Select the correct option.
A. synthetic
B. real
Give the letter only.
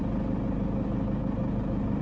B